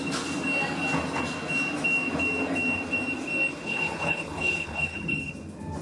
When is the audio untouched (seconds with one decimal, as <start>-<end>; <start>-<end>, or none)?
0.0-3.5; 5.3-5.8